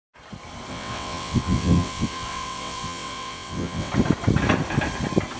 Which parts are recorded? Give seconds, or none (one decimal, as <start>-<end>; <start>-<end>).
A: 0.0-0.7; 3.9-5.4